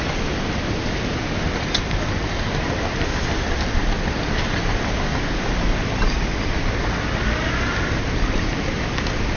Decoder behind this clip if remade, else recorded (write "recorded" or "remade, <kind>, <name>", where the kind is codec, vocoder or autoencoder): recorded